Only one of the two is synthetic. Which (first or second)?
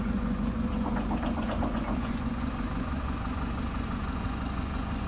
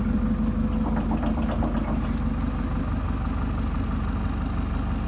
first